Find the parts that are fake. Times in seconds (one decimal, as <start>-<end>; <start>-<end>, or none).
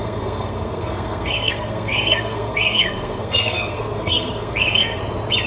0.0-5.0